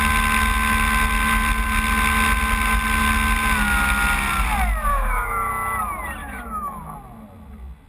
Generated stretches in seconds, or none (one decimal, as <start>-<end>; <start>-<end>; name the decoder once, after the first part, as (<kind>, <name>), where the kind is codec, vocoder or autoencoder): 4.9-5.5 (autoencoder, DAC-VAE); 6.2-6.8